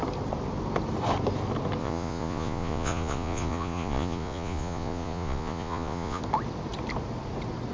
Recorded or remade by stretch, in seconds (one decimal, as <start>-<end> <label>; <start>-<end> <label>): 0.0-1.8 recorded; 1.8-6.2 remade; 6.2-7.7 recorded